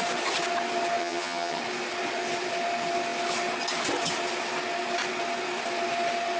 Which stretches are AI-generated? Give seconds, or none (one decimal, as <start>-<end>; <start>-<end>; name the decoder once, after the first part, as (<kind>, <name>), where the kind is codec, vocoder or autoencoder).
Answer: 1.0-1.6 (vocoder, HiFi-GAN)

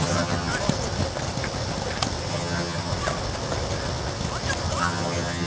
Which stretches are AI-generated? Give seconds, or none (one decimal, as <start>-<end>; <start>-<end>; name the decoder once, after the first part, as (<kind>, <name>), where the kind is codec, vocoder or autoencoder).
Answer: 0.0-0.5 (vocoder, HiFi-GAN); 2.3-2.9; 4.8-5.5

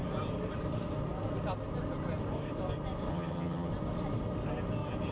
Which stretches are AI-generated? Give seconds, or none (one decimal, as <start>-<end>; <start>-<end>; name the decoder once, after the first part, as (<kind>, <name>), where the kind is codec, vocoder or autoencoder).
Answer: 3.1-3.7 (vocoder, HiFi-GAN)